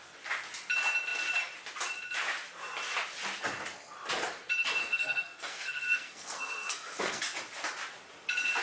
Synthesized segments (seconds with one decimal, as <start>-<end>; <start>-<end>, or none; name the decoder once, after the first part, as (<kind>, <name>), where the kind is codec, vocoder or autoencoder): 4.8-7.2 (codec, SNAC)